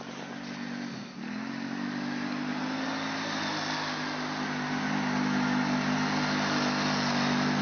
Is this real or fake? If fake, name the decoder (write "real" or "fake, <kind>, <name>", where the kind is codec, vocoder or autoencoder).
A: real